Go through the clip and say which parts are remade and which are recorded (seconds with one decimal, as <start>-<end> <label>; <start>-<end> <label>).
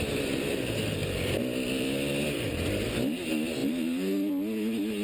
0.0-1.0 recorded; 1.0-2.9 remade; 2.9-3.6 recorded; 3.6-4.3 remade; 4.3-5.0 recorded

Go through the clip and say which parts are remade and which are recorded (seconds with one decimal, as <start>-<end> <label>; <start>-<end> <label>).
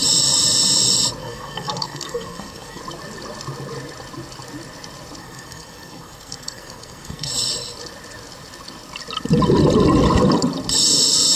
0.0-1.2 recorded; 1.2-2.8 remade; 2.8-5.2 recorded; 5.2-7.3 remade; 7.3-11.4 recorded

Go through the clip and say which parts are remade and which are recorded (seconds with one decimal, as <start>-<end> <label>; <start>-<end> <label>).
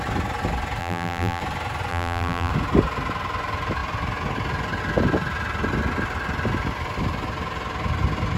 0.0-0.8 recorded; 0.8-1.4 remade; 1.4-1.9 recorded; 1.9-2.5 remade; 2.5-8.4 recorded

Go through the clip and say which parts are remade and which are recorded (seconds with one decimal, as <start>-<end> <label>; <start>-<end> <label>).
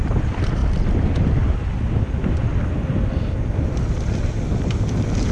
0.0-5.3 recorded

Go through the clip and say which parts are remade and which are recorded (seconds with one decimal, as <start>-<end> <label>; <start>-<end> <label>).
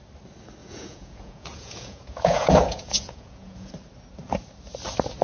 0.0-0.6 recorded; 0.6-3.7 remade; 3.7-5.2 recorded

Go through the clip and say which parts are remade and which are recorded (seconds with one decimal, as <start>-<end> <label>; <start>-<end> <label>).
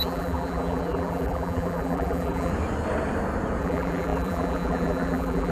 0.0-2.5 remade; 2.5-3.6 recorded; 3.6-5.5 remade